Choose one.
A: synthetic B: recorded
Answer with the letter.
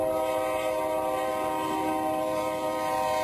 A